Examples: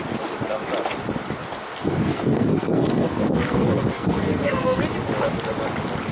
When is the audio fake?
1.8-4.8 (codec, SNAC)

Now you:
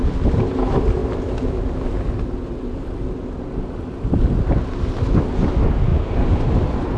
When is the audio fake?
none

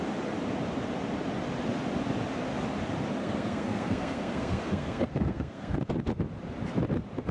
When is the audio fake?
3.2-5.8 (codec, SNAC)